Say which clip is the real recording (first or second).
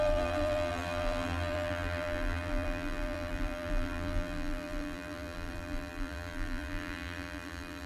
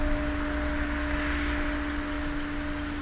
second